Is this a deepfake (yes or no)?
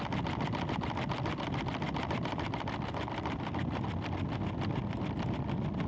no